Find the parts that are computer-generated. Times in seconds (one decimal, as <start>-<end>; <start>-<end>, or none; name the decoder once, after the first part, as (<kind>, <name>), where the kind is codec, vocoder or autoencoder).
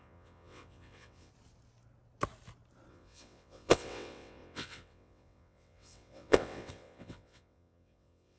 0.0-1.3 (vocoder, WaveNeXt); 2.9-8.4